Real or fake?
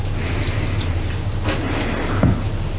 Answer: real